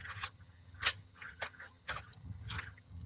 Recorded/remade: remade